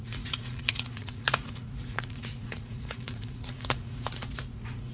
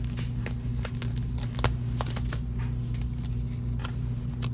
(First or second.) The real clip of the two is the second